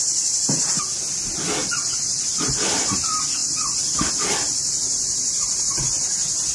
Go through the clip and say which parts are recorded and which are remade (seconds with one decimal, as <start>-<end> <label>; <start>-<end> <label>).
0.0-6.5 recorded